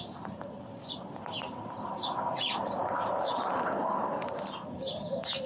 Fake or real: fake